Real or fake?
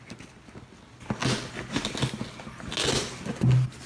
real